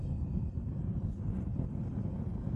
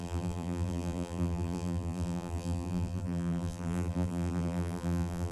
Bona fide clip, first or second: first